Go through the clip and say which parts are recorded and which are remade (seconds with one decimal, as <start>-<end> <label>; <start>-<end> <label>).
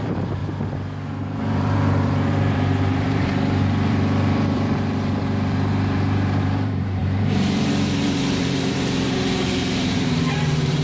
0.0-0.4 remade; 0.4-1.2 recorded; 1.2-10.8 remade